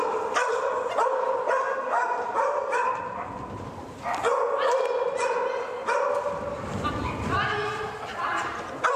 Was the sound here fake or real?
real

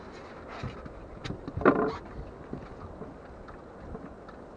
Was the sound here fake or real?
real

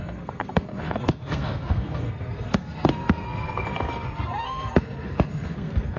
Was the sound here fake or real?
fake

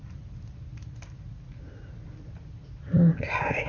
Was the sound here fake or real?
real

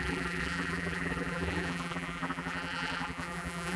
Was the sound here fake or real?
fake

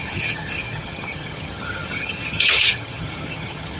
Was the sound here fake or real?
fake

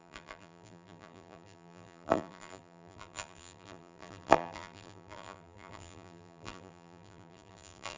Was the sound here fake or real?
fake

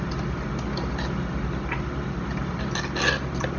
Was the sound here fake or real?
real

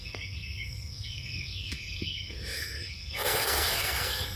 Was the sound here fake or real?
fake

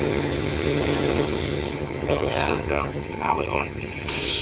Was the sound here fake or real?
fake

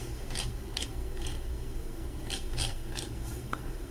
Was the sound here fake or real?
fake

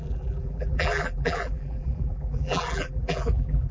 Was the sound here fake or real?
fake